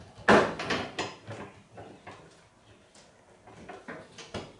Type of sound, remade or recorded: recorded